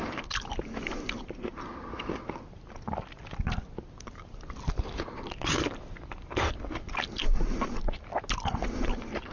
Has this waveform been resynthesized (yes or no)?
no